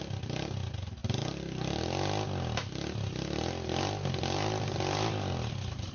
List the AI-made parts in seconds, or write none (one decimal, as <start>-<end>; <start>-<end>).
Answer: none